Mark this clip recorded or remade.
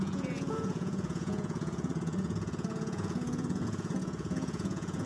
remade